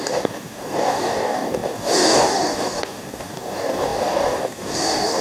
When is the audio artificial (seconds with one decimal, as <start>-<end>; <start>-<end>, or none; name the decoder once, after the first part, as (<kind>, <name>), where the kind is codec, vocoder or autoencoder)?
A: 0.0-5.2 (codec, DAC)